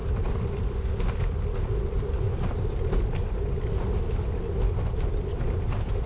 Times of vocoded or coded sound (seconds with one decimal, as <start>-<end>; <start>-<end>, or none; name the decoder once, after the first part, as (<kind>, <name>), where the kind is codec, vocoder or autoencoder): none